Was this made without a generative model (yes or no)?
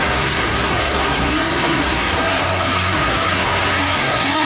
no